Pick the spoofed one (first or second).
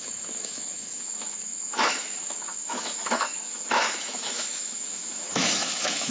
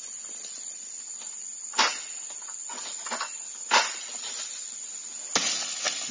first